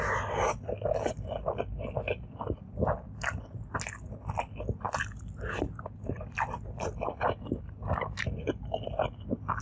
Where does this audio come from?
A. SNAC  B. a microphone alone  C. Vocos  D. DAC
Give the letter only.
B